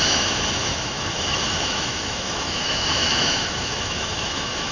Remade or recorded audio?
remade